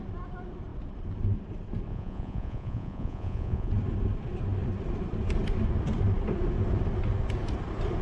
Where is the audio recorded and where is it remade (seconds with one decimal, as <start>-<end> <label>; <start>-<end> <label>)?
0.0-1.9 recorded; 1.9-3.7 remade; 3.7-8.0 recorded

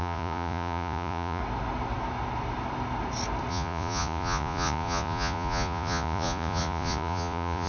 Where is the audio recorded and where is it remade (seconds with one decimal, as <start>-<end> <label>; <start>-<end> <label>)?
0.0-1.4 remade; 1.4-3.5 recorded; 3.5-7.7 remade

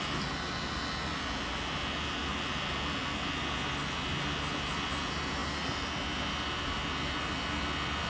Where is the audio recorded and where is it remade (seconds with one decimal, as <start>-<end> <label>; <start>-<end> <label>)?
0.0-8.1 recorded

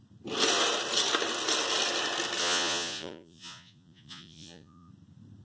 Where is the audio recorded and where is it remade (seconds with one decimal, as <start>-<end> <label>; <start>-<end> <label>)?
0.0-2.4 recorded; 2.4-4.9 remade; 4.9-5.4 recorded